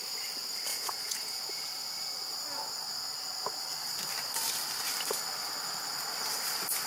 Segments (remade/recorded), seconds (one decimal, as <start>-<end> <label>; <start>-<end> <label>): 0.0-0.7 recorded; 0.7-1.6 remade; 1.6-6.9 recorded